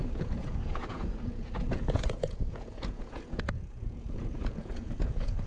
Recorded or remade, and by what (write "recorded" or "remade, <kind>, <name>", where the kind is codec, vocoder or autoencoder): remade, vocoder, Vocos